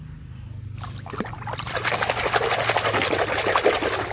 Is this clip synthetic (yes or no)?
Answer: no